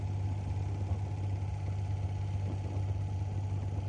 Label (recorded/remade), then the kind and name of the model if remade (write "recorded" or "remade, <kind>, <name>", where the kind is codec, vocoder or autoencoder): recorded